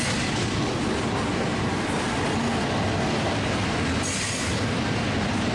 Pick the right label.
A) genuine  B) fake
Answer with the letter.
A